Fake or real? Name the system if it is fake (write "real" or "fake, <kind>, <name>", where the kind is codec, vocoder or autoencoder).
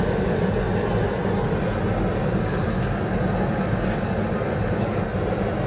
real